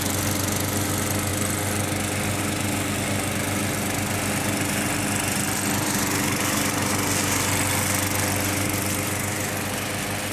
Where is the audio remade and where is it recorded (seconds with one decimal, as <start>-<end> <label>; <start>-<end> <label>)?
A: 0.0-10.3 recorded